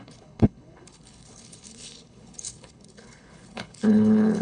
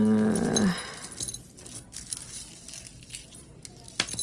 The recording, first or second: second